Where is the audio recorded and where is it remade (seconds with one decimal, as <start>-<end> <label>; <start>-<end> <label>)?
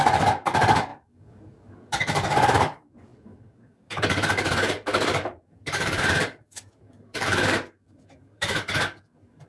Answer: 0.0-9.5 remade